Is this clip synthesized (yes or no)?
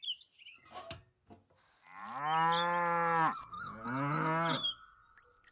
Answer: no